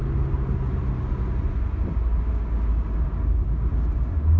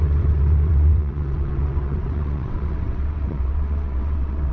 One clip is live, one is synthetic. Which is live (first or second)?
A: first